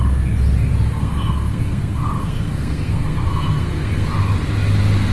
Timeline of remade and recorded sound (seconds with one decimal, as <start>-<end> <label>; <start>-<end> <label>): 0.0-1.0 recorded; 1.0-4.1 remade; 4.1-5.1 recorded